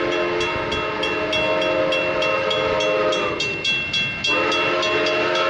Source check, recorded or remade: recorded